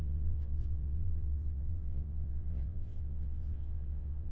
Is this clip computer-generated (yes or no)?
yes